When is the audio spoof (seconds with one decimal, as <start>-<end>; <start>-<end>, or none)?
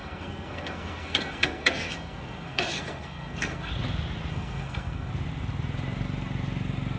0.0-3.7; 4.3-5.1